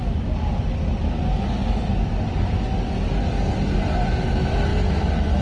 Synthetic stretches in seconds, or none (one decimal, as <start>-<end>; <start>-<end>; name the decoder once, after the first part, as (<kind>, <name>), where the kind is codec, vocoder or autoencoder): none